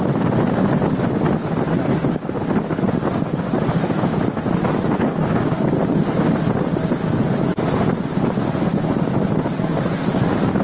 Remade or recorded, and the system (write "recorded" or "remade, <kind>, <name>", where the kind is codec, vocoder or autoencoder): recorded